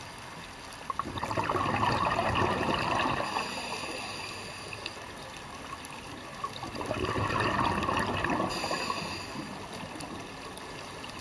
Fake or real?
real